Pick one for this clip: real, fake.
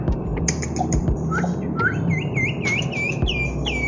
real